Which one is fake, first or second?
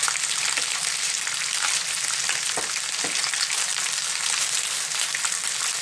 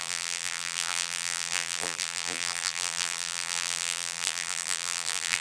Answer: second